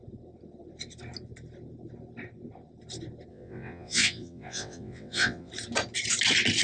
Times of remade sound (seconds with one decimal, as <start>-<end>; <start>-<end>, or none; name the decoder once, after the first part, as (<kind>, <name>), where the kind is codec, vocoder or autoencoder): 3.3-5.5 (vocoder, WaveNeXt)